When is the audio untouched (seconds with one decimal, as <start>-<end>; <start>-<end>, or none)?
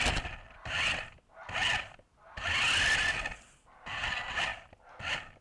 0.0-5.4